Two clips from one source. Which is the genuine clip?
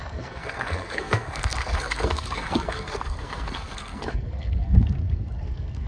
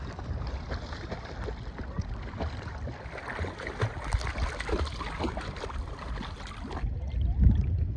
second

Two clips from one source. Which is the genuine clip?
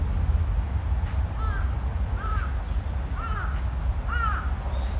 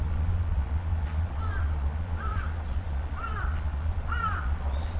first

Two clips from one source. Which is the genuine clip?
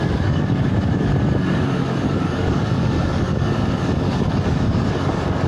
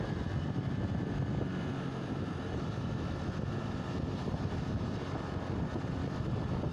second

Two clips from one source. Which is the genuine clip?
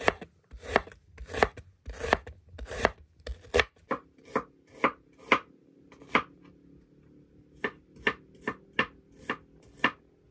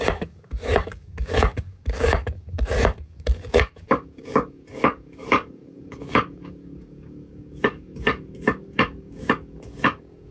first